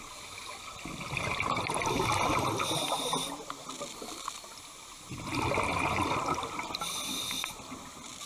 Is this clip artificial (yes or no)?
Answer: no